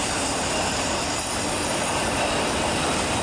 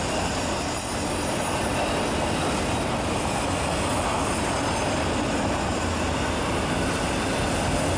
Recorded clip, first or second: second